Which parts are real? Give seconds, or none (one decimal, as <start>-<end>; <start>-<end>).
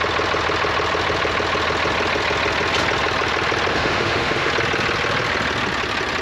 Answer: 0.0-3.7; 4.5-6.2